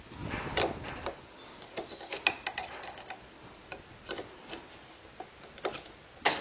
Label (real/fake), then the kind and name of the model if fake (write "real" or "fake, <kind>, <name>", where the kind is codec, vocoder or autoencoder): real